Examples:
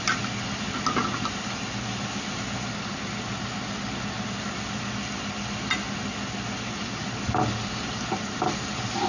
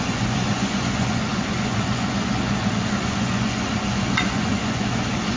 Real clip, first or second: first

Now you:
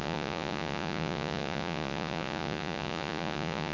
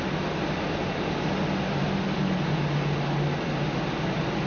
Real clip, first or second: second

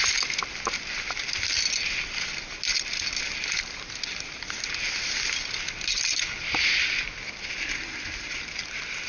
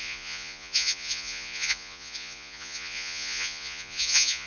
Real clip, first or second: first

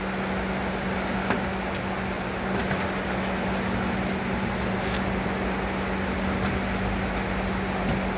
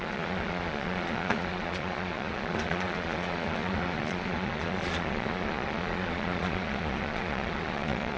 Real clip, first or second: first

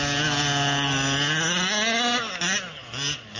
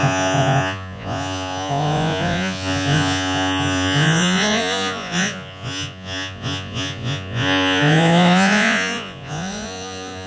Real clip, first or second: first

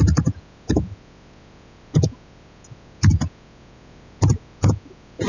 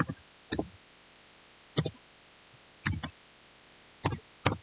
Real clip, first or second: second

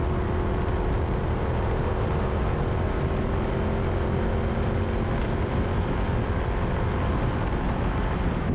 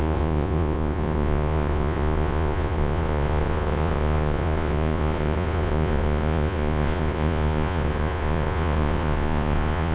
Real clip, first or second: first